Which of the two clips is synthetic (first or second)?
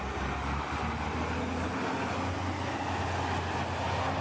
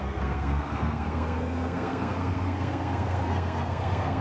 second